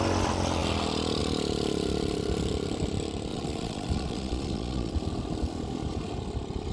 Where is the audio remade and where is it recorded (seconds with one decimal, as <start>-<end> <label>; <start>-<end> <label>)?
0.0-3.3 recorded; 3.3-4.9 remade; 4.9-6.7 recorded